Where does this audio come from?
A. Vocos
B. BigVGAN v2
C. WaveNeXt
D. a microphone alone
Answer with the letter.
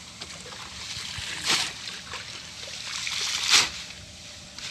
B